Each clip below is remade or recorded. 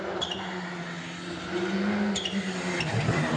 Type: recorded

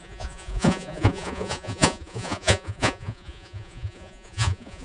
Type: remade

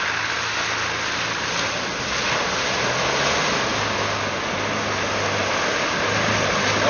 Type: recorded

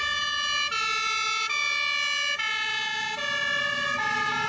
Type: recorded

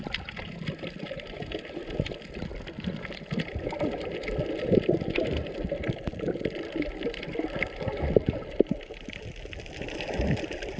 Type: recorded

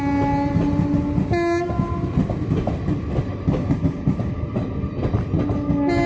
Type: recorded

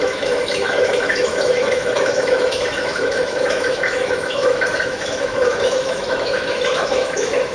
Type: remade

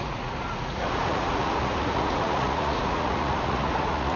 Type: remade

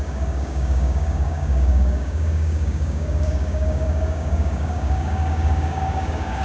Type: remade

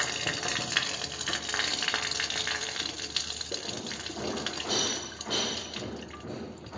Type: remade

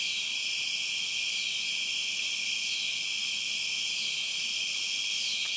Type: recorded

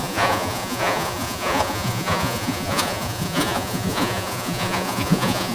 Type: remade